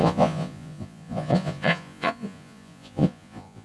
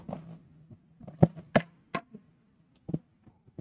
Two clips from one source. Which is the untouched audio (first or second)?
second